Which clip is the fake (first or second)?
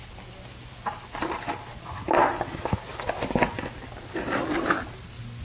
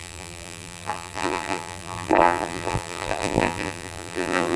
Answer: second